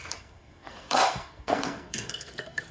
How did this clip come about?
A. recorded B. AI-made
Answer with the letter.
B